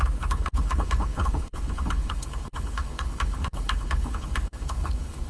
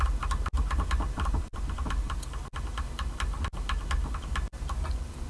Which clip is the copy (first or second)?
first